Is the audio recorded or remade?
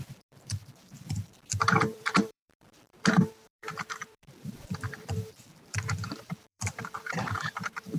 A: remade